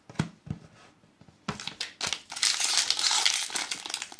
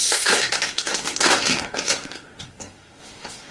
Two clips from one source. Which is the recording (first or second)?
first